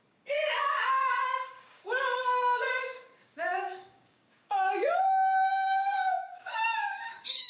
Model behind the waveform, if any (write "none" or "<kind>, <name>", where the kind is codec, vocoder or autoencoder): codec, DAC